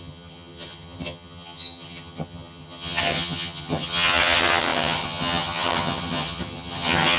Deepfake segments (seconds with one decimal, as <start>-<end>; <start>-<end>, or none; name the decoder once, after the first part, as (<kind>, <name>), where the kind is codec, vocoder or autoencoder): 0.0-7.2 (vocoder, HiFi-GAN)